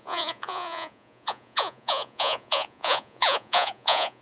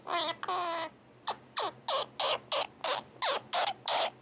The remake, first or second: first